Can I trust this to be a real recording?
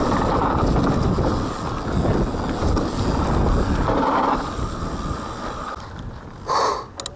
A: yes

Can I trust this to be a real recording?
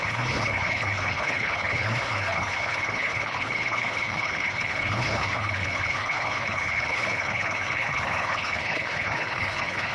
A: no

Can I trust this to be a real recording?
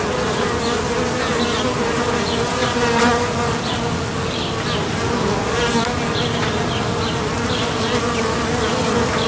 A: yes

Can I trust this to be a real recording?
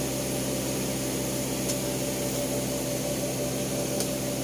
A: yes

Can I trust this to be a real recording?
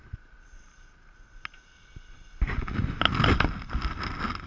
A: yes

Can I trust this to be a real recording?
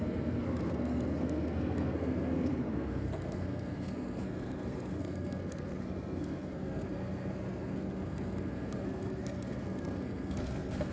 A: no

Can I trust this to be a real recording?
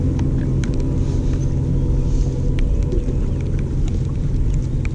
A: yes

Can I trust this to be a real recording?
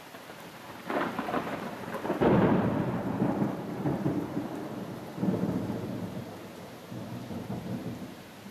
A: no